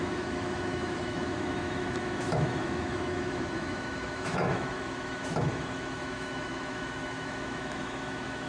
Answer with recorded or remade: remade